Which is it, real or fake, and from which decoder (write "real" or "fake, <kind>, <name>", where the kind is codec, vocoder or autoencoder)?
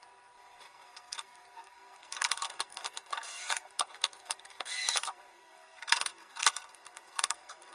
fake, codec, SNAC